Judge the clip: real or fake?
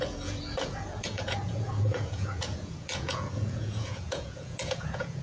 fake